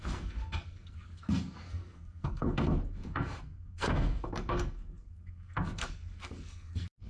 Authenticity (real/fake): fake